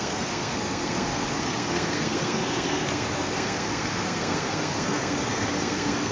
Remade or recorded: remade